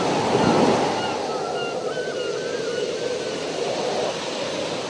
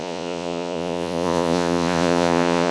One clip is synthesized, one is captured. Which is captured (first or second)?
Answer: first